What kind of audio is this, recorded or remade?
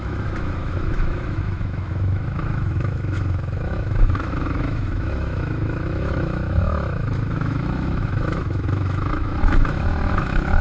remade